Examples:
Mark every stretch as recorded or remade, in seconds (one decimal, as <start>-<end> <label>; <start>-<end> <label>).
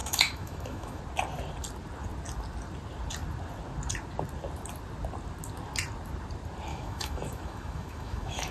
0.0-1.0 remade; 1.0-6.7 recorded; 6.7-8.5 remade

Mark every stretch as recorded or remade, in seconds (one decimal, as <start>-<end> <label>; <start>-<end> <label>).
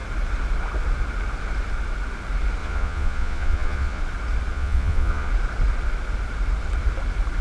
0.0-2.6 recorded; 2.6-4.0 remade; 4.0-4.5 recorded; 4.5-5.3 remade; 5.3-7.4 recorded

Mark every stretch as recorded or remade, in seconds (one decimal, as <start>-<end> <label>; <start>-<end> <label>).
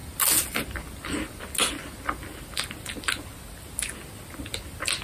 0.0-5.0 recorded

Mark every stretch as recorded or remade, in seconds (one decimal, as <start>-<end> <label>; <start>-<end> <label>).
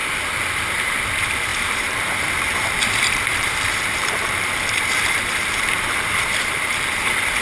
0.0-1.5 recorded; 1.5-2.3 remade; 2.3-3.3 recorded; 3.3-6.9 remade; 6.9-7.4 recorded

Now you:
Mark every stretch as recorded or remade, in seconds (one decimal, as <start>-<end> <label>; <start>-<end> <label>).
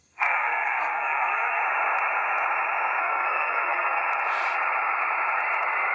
0.0-1.6 remade; 1.6-3.0 recorded; 3.0-4.0 remade; 4.0-5.9 recorded